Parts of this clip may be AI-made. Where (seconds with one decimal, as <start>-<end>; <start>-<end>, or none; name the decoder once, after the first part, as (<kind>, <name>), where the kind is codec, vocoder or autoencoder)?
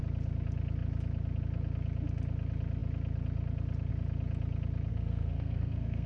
4.9-6.1 (codec, SNAC)